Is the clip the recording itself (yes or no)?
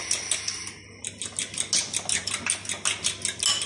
yes